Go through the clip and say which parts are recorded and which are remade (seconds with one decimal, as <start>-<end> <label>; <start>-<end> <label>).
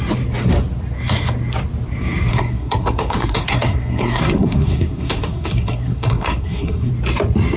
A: 0.0-2.3 recorded; 2.3-6.9 remade; 6.9-7.6 recorded